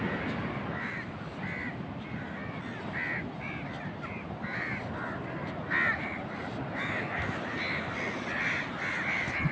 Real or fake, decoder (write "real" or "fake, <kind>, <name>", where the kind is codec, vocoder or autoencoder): real